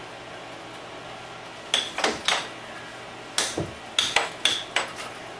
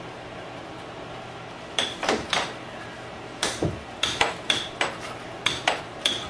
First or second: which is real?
first